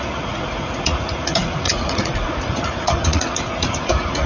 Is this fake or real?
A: fake